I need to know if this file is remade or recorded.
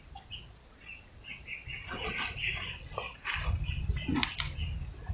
recorded